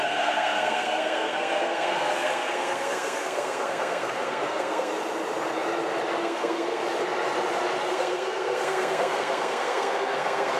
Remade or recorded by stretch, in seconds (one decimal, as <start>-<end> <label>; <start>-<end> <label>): 0.0-4.9 remade; 4.9-6.2 recorded; 6.2-6.8 remade; 6.8-7.8 recorded; 7.8-10.6 remade